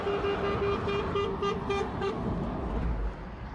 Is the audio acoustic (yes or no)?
yes